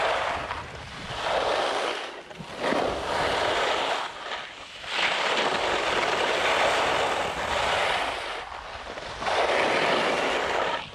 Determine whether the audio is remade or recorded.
recorded